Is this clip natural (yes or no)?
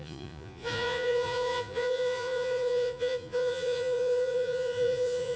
no